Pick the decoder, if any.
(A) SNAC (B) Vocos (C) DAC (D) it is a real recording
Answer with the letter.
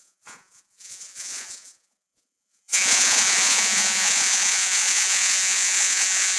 B